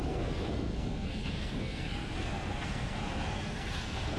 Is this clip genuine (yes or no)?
no